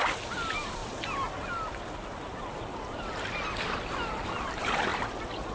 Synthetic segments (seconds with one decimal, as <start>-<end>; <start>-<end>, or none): none